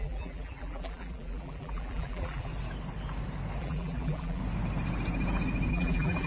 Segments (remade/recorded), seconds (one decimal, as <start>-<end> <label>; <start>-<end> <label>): 0.0-2.5 remade; 2.5-3.6 recorded; 3.6-4.4 remade; 4.4-5.7 recorded; 5.7-6.3 remade